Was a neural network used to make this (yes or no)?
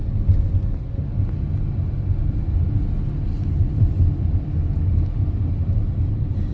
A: no